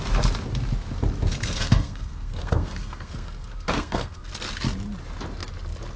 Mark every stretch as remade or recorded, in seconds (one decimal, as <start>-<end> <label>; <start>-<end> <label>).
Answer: 0.0-1.3 recorded; 1.3-4.3 remade; 4.3-6.0 recorded